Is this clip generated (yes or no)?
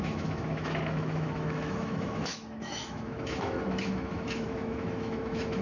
yes